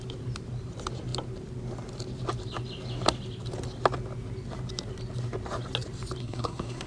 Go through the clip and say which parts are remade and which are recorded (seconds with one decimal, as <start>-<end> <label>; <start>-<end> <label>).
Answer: 0.0-6.2 recorded; 6.2-6.9 remade